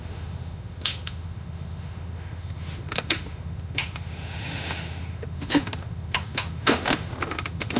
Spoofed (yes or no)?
yes